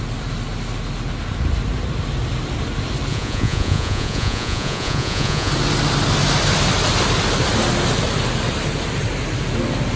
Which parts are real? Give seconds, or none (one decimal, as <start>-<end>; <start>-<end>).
0.0-3.1; 5.5-10.0